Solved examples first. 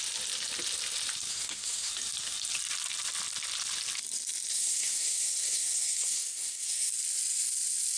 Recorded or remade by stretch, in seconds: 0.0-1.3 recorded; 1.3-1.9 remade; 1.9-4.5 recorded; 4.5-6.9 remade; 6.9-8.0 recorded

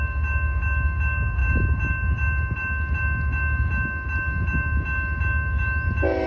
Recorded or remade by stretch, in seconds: 0.0-6.3 recorded

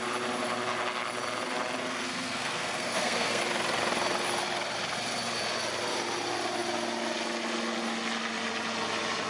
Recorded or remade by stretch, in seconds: 0.0-1.8 recorded; 1.8-3.4 remade; 3.4-9.3 recorded

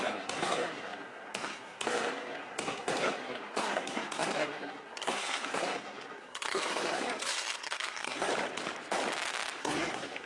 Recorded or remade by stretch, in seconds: 0.0-8.3 remade; 8.3-9.6 recorded; 9.6-10.3 remade

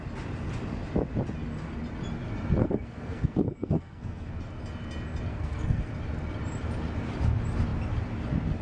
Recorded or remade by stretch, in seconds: 0.0-2.6 recorded; 2.6-4.3 remade; 4.3-5.3 recorded; 5.3-5.9 remade; 5.9-8.6 recorded

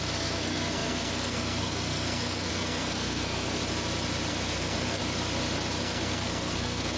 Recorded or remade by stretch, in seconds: 0.0-3.6 remade; 3.6-4.3 recorded; 4.3-5.0 remade; 5.0-5.8 recorded; 5.8-7.0 remade

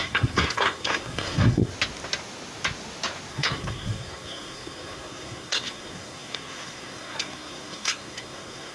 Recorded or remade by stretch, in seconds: 0.0-1.7 remade; 1.7-3.3 recorded; 3.3-8.7 remade